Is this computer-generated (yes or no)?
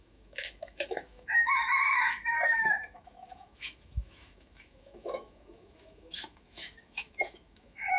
yes